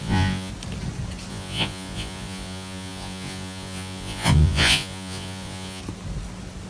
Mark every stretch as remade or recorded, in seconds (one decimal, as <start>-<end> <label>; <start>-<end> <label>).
0.0-0.5 remade; 0.5-1.3 recorded; 1.3-5.8 remade; 5.8-6.7 recorded